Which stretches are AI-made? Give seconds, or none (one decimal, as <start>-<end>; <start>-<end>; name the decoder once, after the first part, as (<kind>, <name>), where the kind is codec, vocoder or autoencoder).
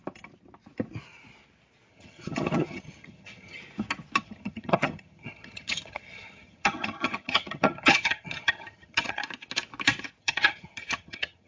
1.9-3.6 (vocoder, HiFi-GAN); 4.2-9.2; 10.2-11.5